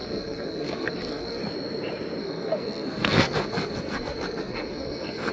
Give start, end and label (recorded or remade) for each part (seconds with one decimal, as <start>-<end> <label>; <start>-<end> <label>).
0.0-1.4 remade; 1.4-2.2 recorded; 2.2-5.3 remade